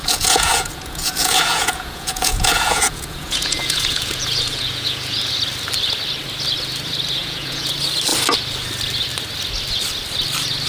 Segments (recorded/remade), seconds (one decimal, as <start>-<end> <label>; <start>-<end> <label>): 0.0-5.3 remade; 5.3-7.2 recorded; 7.2-7.7 remade; 7.7-10.7 recorded